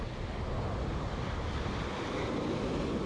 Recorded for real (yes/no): yes